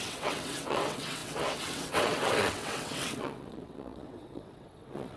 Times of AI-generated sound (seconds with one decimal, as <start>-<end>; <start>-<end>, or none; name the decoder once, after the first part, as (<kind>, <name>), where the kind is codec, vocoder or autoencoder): 0.0-5.2 (vocoder, WaveNeXt)